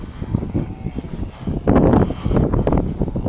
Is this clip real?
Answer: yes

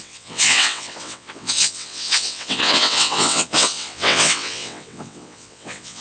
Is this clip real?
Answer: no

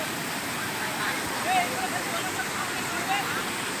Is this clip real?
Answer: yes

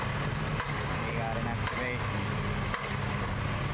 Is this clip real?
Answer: yes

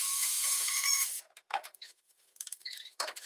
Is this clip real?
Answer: no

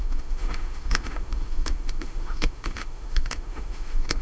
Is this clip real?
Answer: no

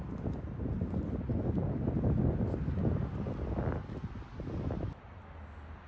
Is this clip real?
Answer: yes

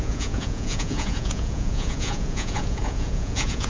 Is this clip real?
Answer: no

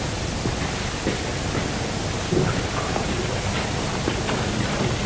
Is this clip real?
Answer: yes